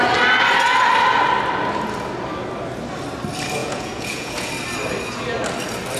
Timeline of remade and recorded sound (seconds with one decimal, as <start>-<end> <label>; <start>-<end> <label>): 0.0-3.6 recorded; 3.6-4.5 remade; 4.5-6.0 recorded